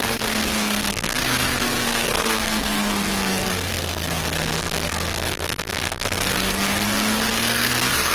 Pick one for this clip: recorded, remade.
remade